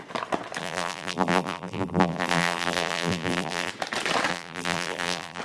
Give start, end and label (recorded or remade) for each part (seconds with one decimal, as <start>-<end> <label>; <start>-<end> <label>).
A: 0.0-0.6 recorded; 0.6-3.7 remade; 3.7-4.3 recorded; 4.3-5.4 remade